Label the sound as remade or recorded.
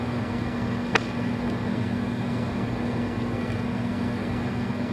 remade